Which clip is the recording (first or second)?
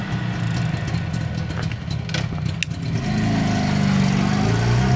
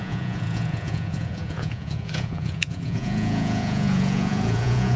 first